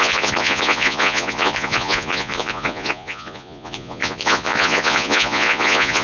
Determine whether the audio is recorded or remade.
remade